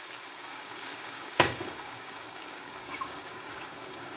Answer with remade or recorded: remade